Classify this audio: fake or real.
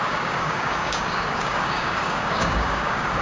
fake